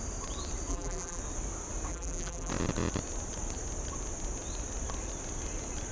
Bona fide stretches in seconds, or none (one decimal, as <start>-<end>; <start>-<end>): 0.0-0.7; 1.2-1.9; 2.5-5.9